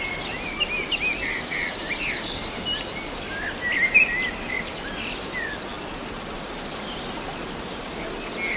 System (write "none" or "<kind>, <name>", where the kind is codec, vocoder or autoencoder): none